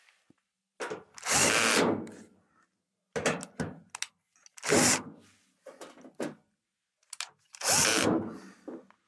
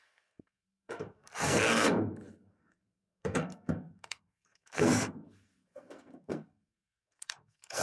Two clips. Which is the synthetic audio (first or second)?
second